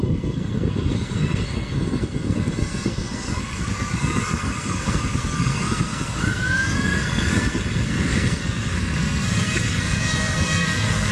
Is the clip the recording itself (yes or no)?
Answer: no